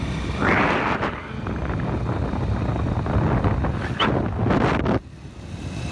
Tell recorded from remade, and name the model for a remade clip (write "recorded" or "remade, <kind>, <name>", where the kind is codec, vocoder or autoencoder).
recorded